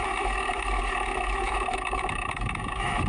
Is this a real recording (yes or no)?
no